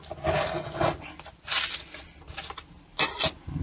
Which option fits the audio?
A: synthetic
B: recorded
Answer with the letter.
B